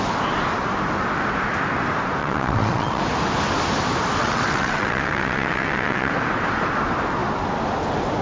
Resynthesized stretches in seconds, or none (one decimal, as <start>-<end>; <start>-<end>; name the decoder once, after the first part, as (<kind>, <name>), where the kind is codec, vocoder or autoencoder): 2.2-3.0 (vocoder, WaveNeXt); 4.2-6.1